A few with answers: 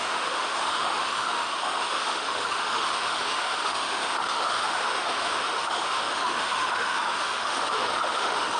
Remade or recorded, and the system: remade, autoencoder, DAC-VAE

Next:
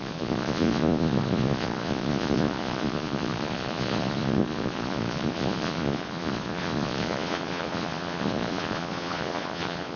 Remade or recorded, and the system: remade, vocoder, Vocos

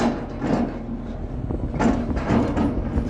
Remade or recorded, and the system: recorded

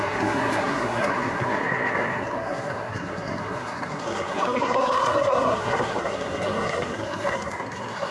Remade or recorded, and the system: remade, codec, SNAC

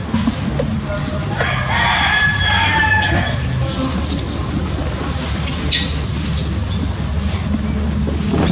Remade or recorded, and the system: recorded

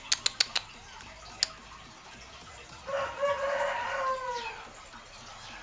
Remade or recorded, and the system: recorded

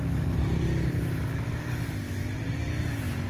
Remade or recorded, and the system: recorded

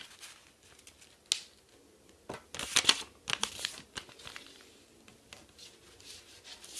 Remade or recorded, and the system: recorded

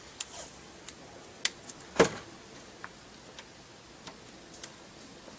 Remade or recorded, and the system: recorded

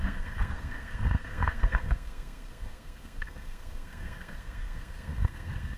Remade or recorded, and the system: remade, codec, SNAC